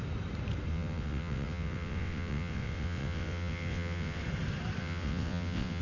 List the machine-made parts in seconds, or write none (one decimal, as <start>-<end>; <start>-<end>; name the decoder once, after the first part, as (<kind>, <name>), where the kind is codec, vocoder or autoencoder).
0.7-4.2 (vocoder, WaveNeXt); 4.8-5.8